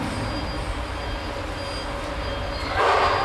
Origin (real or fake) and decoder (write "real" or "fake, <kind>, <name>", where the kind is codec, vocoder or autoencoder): real